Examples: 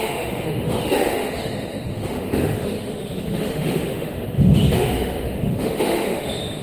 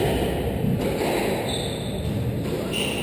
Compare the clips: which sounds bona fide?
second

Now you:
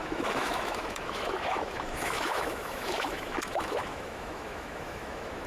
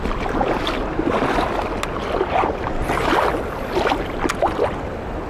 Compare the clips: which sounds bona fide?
second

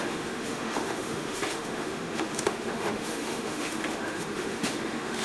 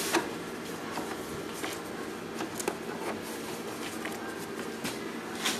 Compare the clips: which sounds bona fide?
second